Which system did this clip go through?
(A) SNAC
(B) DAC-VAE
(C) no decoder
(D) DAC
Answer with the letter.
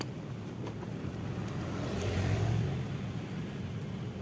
C